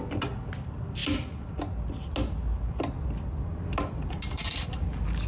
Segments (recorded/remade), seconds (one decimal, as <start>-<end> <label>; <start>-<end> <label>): 0.0-5.3 recorded